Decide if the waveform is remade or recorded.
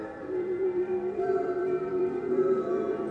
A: remade